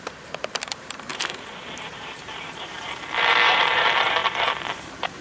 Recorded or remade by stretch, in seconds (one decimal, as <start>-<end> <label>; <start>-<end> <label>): 0.0-5.2 remade